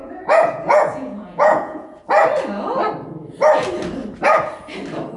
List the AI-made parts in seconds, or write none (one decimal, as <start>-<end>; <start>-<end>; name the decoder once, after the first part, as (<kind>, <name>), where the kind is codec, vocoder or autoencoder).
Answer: 0.0-2.0 (vocoder, Vocos)